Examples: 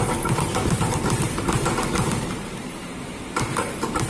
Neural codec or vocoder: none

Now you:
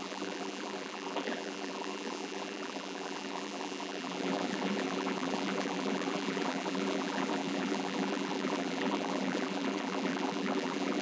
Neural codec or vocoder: vocoder, BigVGAN v2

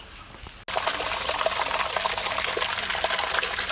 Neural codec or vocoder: none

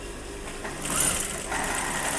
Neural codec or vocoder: none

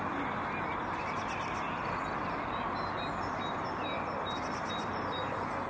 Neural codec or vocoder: none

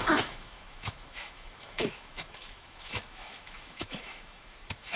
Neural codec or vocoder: autoencoder, DAC-VAE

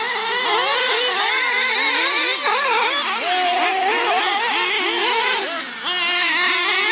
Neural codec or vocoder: none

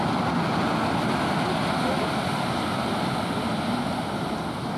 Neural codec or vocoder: none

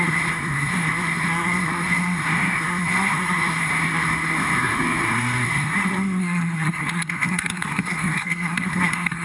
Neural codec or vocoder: codec, SNAC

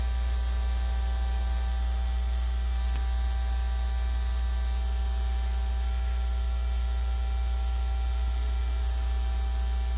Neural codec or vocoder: none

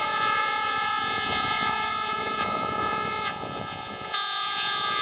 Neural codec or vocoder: vocoder, Vocos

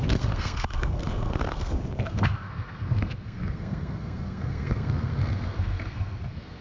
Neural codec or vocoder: codec, SNAC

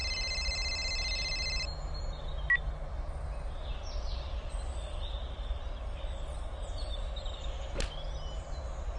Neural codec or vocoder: none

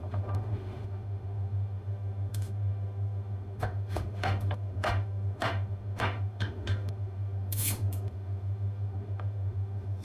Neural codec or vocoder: autoencoder, DAC-VAE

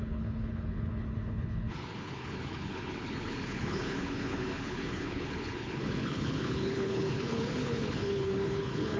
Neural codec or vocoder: codec, HILCodec